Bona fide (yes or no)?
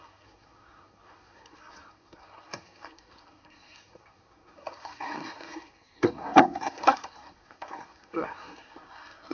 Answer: no